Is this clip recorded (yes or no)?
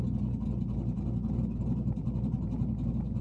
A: yes